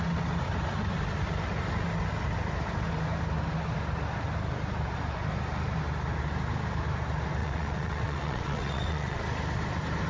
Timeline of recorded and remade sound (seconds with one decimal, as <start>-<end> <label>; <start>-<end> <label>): 0.0-7.4 recorded; 7.4-9.2 remade; 9.2-10.1 recorded